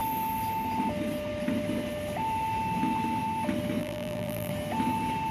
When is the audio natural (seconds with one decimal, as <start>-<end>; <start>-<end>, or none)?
0.0-3.8; 4.5-5.3